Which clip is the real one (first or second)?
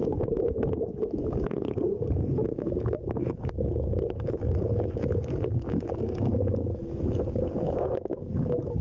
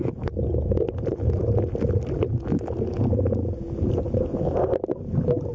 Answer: second